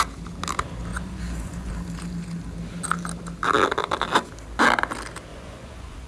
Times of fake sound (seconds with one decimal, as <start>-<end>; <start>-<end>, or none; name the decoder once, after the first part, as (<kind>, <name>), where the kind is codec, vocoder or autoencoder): 0.9-1.7 (vocoder, Vocos); 5.3-6.1